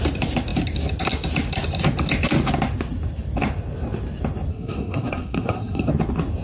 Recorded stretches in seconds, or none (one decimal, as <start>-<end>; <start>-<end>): 0.0-4.5; 5.9-6.4